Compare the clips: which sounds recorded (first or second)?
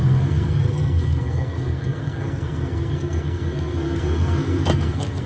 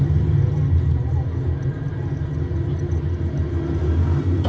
second